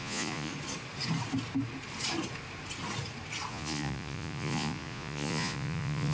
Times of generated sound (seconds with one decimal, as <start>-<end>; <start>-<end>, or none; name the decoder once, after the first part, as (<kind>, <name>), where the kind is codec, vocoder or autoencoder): 0.0-0.5 (vocoder, Vocos); 3.5-6.1